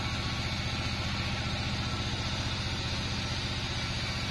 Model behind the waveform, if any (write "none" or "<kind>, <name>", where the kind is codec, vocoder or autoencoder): none